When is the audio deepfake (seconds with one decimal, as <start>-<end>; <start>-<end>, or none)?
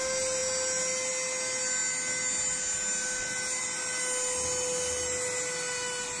none